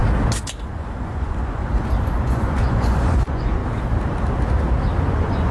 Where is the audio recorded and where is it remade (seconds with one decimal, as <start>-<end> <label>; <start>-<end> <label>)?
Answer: 0.0-0.7 recorded; 0.7-1.6 remade; 1.6-2.1 recorded; 2.1-3.6 remade; 3.6-5.1 recorded; 5.1-5.5 remade